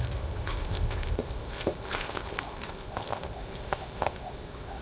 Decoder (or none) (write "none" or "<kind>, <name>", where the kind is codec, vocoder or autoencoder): codec, ZipCodec